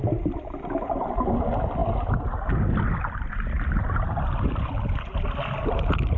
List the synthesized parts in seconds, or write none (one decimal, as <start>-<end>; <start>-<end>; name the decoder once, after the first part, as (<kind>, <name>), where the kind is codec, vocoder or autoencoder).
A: none